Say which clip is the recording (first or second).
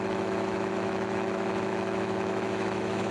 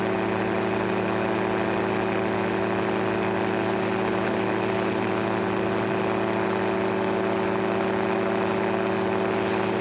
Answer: second